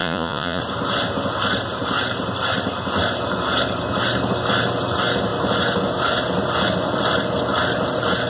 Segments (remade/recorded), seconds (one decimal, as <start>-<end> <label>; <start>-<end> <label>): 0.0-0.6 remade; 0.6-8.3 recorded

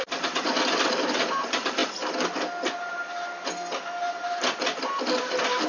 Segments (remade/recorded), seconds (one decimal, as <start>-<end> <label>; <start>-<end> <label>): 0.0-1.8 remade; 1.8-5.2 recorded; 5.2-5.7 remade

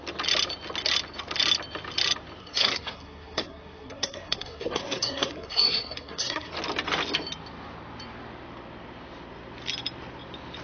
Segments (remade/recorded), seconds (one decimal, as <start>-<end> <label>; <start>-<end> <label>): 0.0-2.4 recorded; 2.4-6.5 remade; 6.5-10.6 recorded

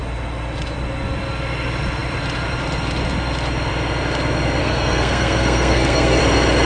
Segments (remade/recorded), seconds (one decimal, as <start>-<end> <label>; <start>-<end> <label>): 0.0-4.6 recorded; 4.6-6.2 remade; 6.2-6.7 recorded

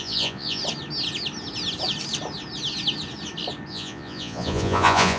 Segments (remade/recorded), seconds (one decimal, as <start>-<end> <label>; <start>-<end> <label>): 0.0-0.6 remade; 0.6-3.7 recorded; 3.7-5.2 remade

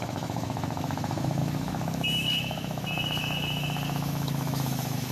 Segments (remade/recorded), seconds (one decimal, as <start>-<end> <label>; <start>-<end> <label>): 0.0-5.1 remade

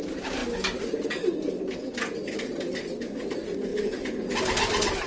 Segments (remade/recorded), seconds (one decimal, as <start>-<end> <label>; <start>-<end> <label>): 0.0-5.1 recorded

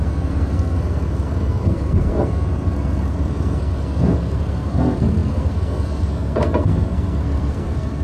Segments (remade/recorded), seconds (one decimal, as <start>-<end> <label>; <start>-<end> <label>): 0.0-8.0 remade